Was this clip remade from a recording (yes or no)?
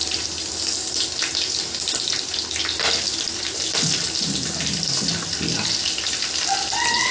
no